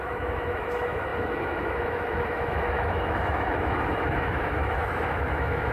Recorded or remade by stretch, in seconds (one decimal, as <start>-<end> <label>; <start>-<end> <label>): 0.0-5.7 remade